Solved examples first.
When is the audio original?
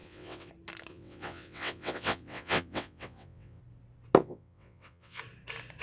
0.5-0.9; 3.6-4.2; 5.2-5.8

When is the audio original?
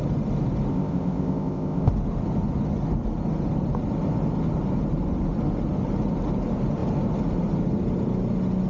0.0-0.7; 1.9-8.7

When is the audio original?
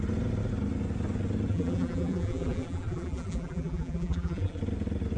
0.0-1.5; 4.6-5.2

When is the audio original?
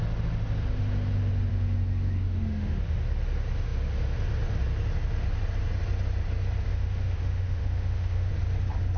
0.0-1.5; 2.8-6.7; 8.3-9.0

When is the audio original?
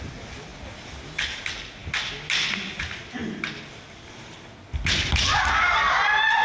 0.0-6.4